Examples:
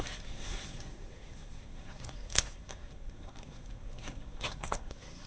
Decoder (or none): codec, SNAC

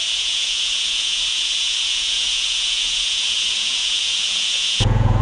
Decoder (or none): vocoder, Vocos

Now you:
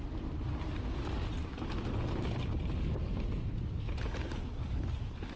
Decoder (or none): none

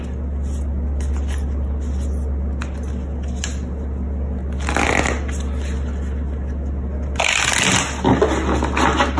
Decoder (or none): none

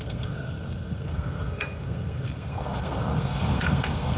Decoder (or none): codec, SNAC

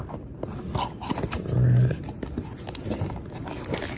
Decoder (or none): none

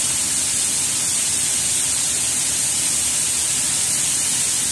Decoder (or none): none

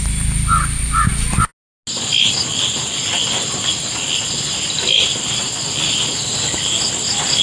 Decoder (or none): none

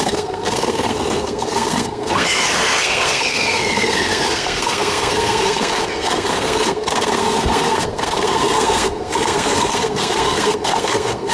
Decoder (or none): codec, SNAC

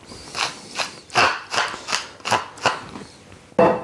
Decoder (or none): none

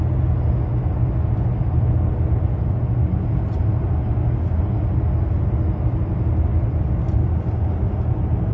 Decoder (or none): none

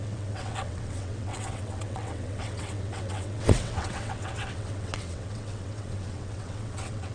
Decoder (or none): vocoder, WaveNeXt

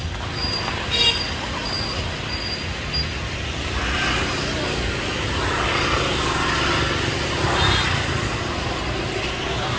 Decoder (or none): none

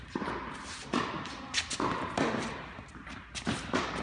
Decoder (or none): none